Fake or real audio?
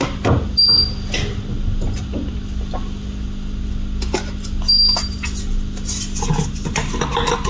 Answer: real